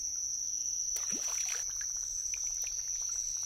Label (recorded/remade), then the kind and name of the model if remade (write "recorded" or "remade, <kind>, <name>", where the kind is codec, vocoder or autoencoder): recorded